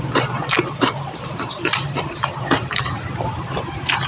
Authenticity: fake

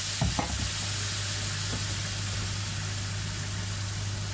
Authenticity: real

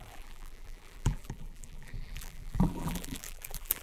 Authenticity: fake